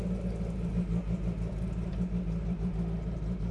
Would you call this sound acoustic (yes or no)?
yes